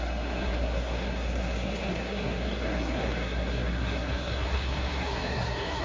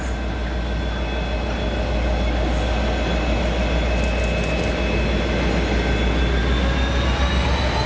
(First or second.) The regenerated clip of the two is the first